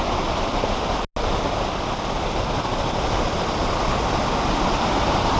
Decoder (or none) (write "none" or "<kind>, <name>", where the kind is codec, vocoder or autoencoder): none